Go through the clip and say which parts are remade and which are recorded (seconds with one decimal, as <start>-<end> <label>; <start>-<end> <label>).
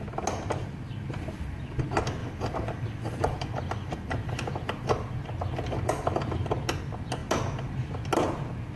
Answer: 0.0-2.2 recorded; 2.2-6.2 remade; 6.2-8.8 recorded